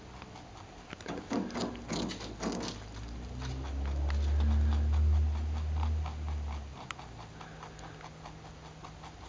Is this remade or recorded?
recorded